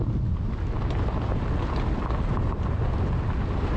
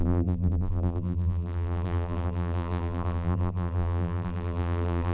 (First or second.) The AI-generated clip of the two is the second